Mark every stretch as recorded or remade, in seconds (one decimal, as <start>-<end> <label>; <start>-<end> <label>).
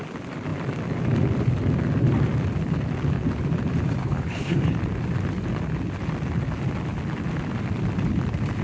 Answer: 0.0-4.0 recorded; 4.0-4.6 remade; 4.6-8.6 recorded